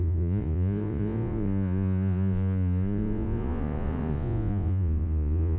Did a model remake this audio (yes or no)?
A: yes